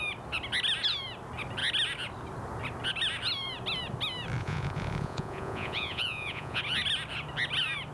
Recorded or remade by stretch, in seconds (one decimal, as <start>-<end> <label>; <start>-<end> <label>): 0.0-4.4 recorded; 4.4-6.6 remade; 6.6-7.9 recorded